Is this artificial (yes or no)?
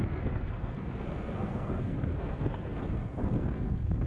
yes